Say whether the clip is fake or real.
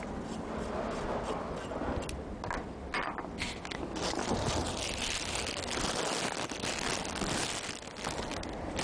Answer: real